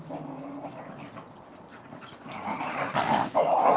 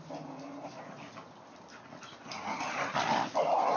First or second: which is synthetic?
first